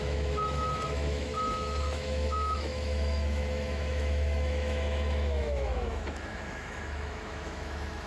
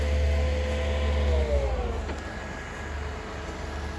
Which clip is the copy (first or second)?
first